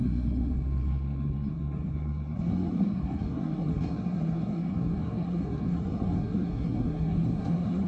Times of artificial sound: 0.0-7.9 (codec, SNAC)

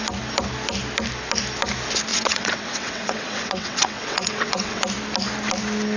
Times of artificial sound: 2.1-4.8 (vocoder, WaveNeXt)

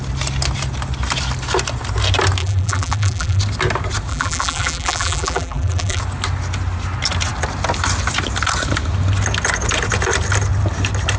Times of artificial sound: 2.4-3.4 (vocoder, BigVGAN v2); 4.1-6.0

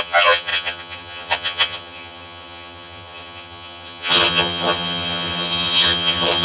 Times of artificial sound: 0.0-6.4 (vocoder, HiFi-GAN)

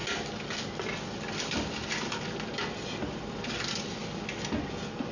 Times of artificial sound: none